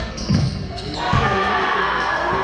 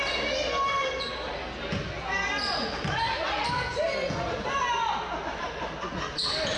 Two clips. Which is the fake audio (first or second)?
first